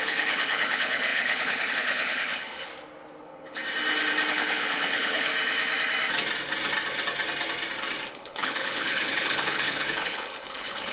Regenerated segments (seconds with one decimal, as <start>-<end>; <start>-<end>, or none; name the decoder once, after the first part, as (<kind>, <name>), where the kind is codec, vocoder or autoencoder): 0.0-2.7 (codec, HILCodec); 3.2-3.6; 4.3-5.3; 8.1-10.9